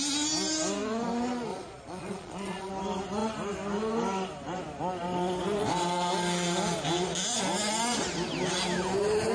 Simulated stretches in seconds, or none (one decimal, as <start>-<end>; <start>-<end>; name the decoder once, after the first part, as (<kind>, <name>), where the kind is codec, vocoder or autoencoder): 1.5-2.7 (vocoder, Vocos)